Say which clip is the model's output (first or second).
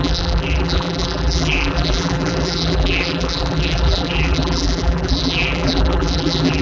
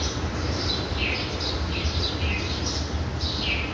first